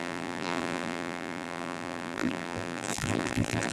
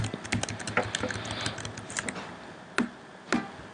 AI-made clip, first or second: first